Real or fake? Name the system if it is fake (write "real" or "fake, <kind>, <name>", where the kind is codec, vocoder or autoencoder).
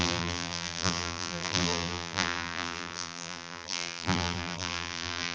fake, vocoder, BigVGAN v2